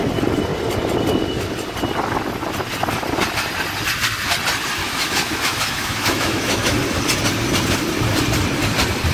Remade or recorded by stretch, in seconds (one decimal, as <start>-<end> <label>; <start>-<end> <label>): 0.0-4.8 recorded; 4.8-6.8 remade; 6.8-9.1 recorded